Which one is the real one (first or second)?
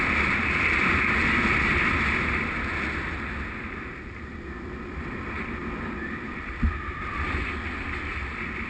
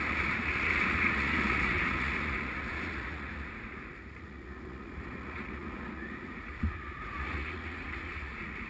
first